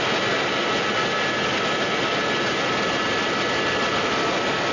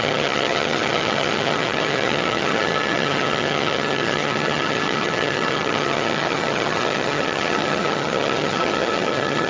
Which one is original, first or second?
first